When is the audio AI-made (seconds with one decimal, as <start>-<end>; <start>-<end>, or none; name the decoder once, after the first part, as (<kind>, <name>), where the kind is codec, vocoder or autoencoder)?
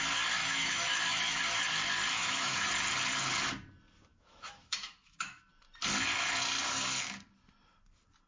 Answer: 0.4-1.4 (autoencoder, DAC-VAE); 2.2-2.7; 4.1-5.5